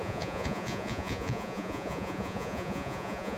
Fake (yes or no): yes